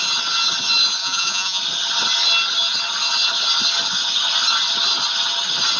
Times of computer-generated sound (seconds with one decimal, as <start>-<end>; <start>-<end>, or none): 1.0-1.6